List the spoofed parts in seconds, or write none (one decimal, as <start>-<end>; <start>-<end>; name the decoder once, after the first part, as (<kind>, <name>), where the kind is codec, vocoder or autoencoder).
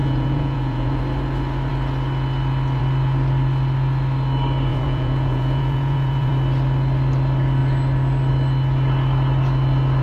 0.0-1.0 (vocoder, Vocos); 4.7-6.3